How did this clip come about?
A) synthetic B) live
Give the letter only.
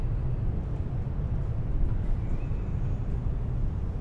B